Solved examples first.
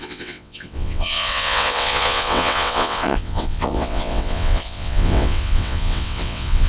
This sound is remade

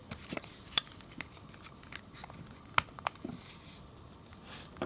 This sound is recorded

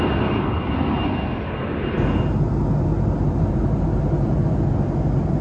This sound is recorded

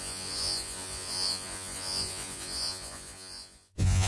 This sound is remade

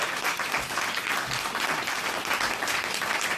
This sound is recorded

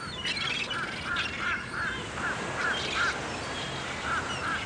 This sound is recorded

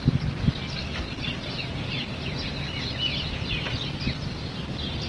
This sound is recorded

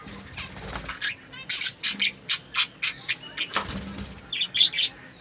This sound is recorded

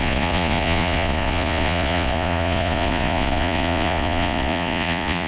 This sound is remade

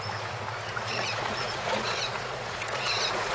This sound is remade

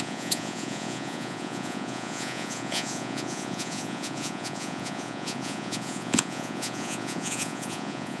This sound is remade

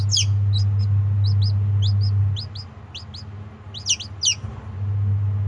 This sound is recorded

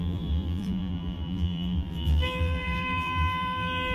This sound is remade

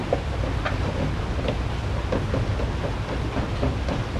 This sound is recorded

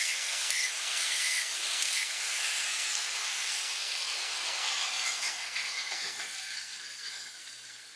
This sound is remade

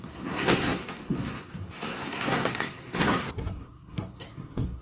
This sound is remade